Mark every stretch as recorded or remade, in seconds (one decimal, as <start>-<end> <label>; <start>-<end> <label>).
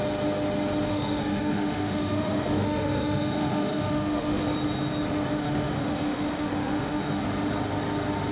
0.0-0.9 recorded; 0.9-4.4 remade; 4.4-5.4 recorded; 5.4-7.2 remade; 7.2-8.3 recorded